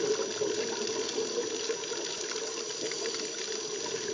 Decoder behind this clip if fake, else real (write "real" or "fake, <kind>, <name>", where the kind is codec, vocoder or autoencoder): real